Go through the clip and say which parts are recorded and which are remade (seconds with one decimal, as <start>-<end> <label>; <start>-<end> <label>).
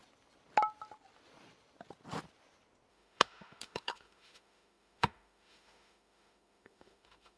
0.0-2.9 recorded; 2.9-7.4 remade